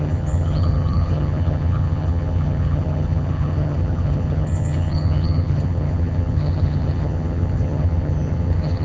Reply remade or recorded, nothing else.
remade